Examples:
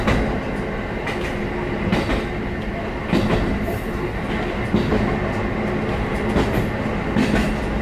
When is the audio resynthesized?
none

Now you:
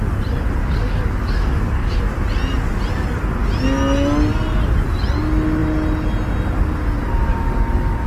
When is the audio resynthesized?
0.6-2.0 (codec, DAC); 7.2-8.1

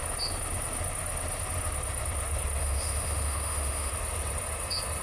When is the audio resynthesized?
2.6-3.9 (autoencoder, DAC-VAE)

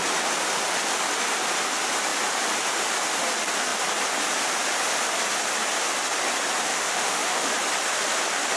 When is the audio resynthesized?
6.7-7.5 (autoencoder, DAC-VAE)

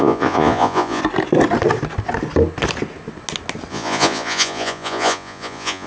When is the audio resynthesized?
0.0-1.0 (vocoder, Vocos); 3.7-5.9

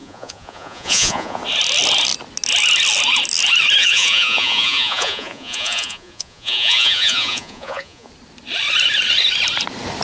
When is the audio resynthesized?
0.0-1.4 (vocoder, Vocos); 3.8-8.1